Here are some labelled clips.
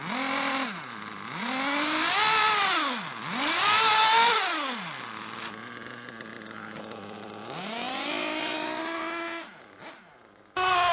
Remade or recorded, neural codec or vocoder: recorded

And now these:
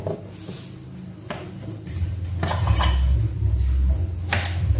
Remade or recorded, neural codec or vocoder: recorded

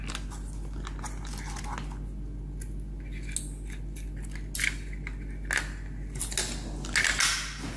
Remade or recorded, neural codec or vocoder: recorded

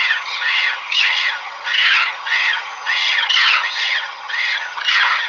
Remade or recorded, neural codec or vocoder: remade, vocoder, HiFi-GAN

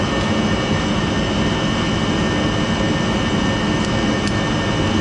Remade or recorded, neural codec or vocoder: recorded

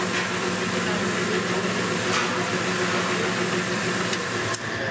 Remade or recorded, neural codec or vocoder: recorded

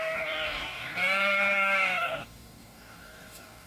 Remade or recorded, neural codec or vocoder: remade, codec, DAC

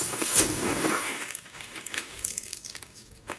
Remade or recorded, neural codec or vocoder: remade, codec, DAC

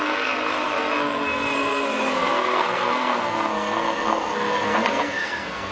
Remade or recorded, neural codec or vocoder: remade, codec, SNAC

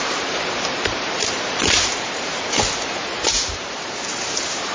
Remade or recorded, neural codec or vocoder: remade, vocoder, BigVGAN v2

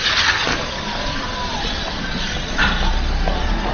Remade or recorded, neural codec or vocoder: recorded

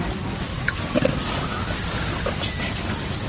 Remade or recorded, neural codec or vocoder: recorded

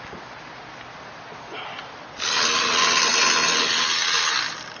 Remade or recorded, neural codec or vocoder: recorded